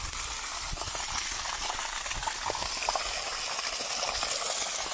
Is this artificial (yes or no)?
no